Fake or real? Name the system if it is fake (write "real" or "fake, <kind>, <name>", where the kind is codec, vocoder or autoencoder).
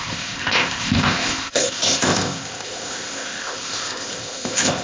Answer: fake, codec, ZipCodec